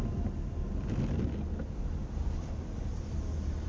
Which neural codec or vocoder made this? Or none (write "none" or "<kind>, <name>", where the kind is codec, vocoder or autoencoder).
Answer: none